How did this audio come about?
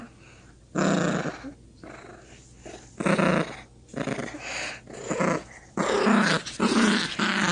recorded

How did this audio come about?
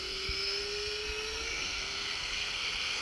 remade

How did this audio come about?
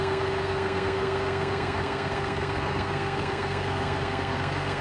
remade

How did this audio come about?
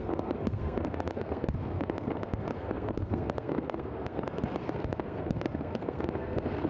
remade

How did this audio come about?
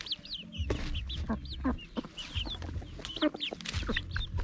recorded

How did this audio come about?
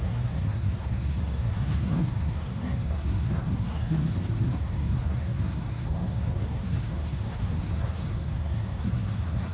remade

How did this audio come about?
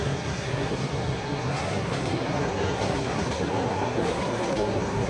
remade